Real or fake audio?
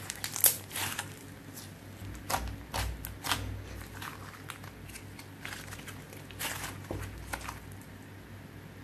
real